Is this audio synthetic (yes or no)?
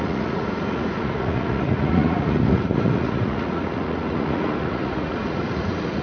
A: yes